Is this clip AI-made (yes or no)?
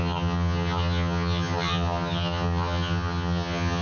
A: yes